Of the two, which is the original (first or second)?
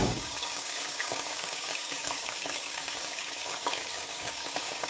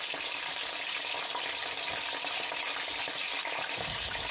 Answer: second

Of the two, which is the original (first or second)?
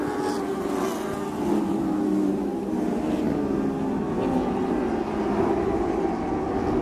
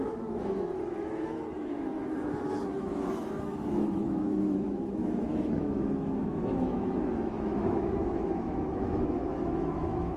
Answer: first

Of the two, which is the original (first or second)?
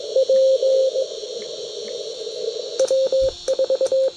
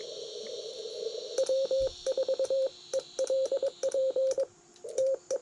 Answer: first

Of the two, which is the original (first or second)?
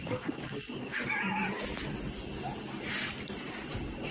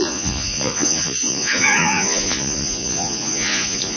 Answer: first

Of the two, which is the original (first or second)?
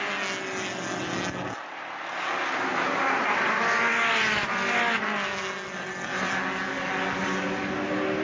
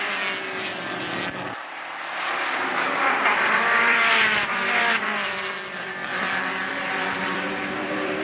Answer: first